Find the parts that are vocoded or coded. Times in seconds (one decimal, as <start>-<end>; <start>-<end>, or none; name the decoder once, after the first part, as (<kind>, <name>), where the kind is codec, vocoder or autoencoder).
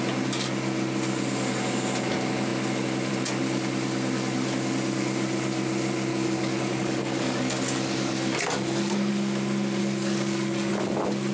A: 6.1-9.1 (codec, DAC); 9.8-10.7